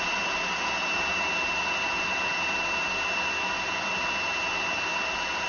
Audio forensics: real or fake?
real